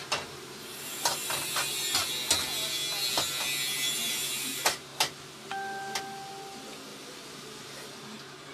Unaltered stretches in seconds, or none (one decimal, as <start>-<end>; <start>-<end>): 0.0-8.5